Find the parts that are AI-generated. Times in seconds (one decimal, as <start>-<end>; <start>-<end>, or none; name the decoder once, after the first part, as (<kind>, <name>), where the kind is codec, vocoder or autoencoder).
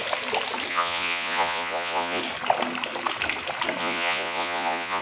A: 0.7-2.2 (vocoder, Vocos); 3.8-5.0